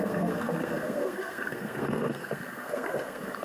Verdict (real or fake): fake